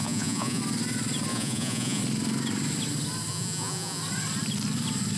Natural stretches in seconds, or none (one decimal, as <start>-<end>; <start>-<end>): 0.6-1.3; 2.0-3.3; 4.0-5.2